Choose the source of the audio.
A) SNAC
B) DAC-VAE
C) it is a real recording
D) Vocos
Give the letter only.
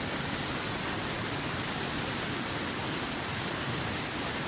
C